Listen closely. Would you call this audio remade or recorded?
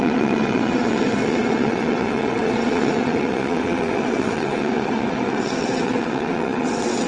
remade